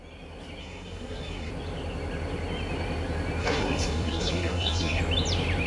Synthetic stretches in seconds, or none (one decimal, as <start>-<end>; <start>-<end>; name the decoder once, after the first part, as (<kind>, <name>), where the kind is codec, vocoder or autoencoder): 0.6-1.5 (codec, SNAC); 3.4-5.0